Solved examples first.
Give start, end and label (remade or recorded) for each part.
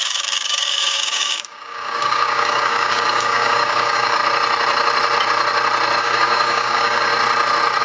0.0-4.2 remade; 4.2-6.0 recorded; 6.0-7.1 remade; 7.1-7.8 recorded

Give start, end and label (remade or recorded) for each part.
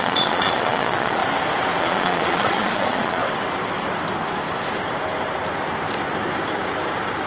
0.0-1.2 remade; 1.2-1.8 recorded; 1.8-3.2 remade; 3.2-7.3 recorded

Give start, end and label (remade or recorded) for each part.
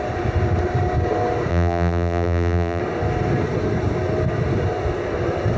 0.0-1.5 recorded; 1.5-2.8 remade; 2.8-5.6 recorded